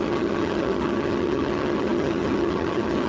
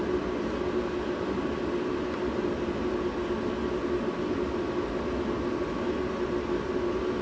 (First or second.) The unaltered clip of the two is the second